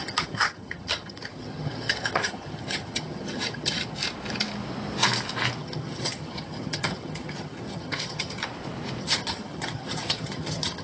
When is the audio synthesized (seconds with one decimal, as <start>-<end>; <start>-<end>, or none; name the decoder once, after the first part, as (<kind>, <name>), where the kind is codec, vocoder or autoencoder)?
0.0-4.0 (vocoder, HiFi-GAN); 5.6-8.4; 9.0-10.8